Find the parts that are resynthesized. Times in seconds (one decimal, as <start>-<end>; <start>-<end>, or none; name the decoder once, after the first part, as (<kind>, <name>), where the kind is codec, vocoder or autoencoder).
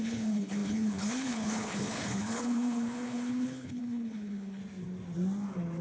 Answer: 0.0-4.6 (codec, HILCodec)